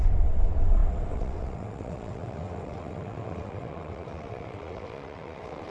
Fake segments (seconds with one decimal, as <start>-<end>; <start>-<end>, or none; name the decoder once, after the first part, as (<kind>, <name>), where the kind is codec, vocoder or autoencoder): 0.0-5.7 (vocoder, WaveNeXt)